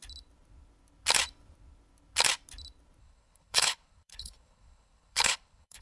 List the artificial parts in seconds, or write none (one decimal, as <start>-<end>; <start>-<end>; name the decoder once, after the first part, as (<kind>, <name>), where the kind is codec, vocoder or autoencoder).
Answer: 3.0-5.8 (codec, HILCodec)